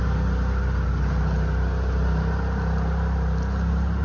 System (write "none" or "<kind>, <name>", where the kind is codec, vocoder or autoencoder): none